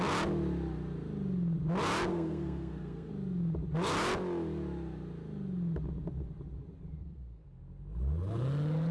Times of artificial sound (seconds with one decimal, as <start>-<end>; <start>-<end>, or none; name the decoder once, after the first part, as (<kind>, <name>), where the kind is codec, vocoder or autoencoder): 2.1-3.1 (codec, SNAC); 7.0-7.6